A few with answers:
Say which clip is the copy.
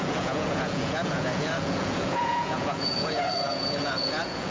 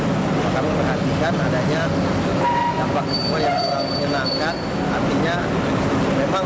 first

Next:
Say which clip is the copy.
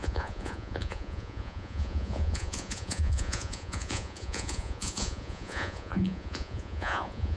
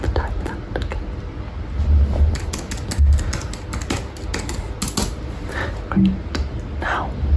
first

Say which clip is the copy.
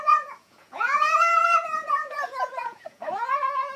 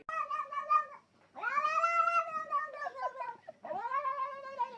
first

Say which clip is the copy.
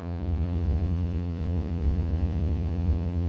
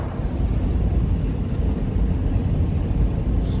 first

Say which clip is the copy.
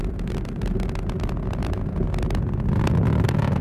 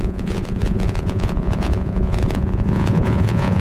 second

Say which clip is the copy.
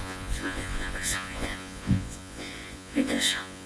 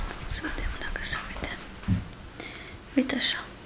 first